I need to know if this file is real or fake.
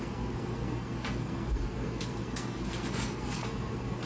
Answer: fake